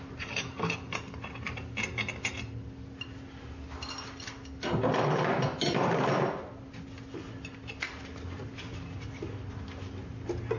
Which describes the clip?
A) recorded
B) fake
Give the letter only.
A